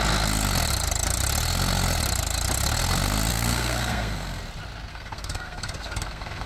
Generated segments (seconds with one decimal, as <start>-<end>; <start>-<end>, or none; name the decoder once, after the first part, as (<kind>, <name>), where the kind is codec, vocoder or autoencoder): 3.3-4.4 (codec, SNAC); 4.9-6.5